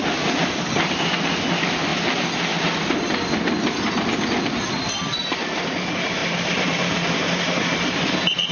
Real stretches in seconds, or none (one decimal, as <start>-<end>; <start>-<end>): 0.0-8.5